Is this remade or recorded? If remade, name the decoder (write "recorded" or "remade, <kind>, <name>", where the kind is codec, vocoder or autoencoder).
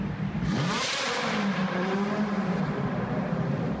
remade, vocoder, BigVGAN v2